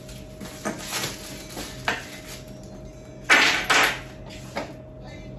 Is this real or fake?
real